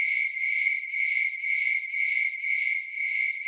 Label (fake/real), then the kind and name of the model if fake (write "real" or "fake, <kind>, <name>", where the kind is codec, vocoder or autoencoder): real